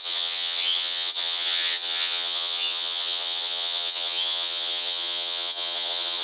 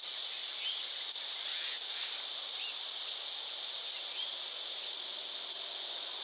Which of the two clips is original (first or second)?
second